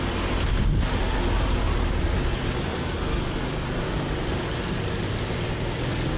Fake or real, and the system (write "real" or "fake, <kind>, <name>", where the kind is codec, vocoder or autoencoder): real